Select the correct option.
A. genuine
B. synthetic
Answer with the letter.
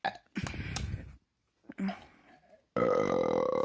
A